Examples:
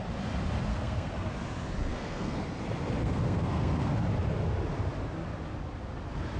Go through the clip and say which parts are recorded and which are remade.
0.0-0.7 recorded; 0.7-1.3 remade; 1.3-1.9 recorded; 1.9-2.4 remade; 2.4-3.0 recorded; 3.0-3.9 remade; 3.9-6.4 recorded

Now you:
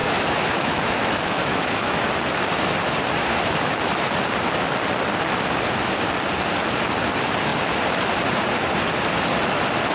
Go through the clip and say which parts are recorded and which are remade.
0.0-2.1 remade; 2.1-9.9 recorded

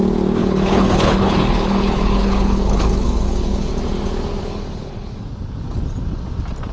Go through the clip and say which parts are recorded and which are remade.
0.0-0.4 recorded; 0.4-3.7 remade; 3.7-4.4 recorded; 4.4-5.2 remade; 5.2-6.7 recorded

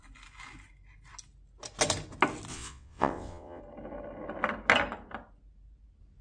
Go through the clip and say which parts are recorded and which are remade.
0.0-2.5 recorded; 2.5-3.6 remade; 3.6-6.2 recorded

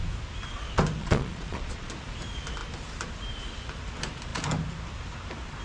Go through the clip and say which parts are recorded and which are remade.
0.0-1.0 recorded; 1.0-1.9 remade; 1.9-5.6 recorded

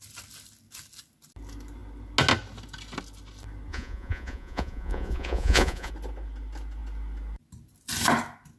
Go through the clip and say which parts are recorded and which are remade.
0.0-3.7 recorded; 3.7-5.9 remade; 5.9-8.6 recorded